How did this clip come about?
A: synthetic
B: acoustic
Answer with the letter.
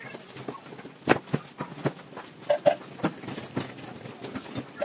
B